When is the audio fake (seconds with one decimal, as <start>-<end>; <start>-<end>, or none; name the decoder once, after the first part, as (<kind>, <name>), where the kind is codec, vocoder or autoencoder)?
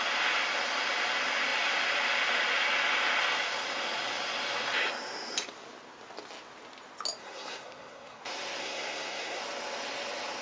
7.2-8.2 (codec, SNAC); 8.6-9.4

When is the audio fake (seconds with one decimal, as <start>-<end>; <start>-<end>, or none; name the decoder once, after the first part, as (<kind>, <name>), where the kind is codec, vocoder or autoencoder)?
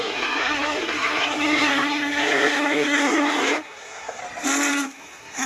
0.0-4.2 (codec, SNAC); 4.7-5.5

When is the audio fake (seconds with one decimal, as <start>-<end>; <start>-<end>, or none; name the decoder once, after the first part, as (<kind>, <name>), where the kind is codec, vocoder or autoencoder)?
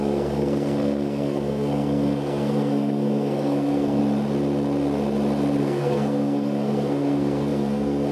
0.0-4.0 (codec, SNAC); 5.6-8.1